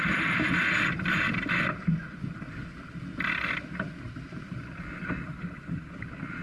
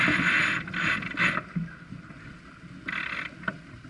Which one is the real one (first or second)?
second